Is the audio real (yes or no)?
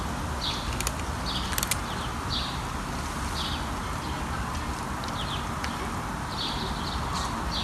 yes